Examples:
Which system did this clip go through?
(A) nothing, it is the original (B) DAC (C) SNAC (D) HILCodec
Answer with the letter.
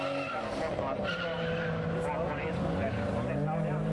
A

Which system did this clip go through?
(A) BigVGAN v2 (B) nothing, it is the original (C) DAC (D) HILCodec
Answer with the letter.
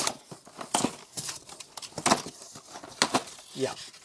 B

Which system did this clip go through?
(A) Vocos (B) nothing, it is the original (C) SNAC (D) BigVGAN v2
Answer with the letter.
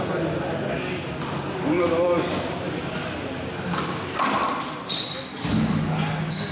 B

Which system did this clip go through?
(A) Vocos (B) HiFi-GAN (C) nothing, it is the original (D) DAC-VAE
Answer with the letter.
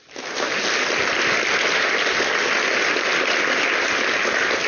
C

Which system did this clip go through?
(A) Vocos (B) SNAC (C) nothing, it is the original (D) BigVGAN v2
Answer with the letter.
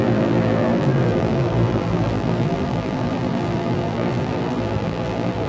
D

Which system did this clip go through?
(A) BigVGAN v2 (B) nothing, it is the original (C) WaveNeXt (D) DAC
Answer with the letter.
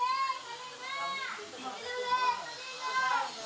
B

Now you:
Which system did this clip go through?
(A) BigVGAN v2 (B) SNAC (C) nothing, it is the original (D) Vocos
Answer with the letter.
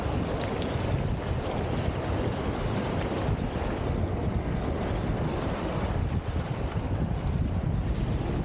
C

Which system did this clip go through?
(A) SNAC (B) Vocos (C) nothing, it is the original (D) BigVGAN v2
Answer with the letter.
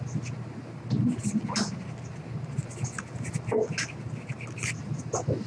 C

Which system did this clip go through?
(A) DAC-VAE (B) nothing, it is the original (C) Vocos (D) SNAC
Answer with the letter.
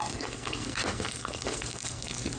D